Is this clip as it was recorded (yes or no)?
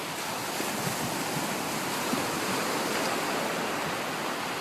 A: yes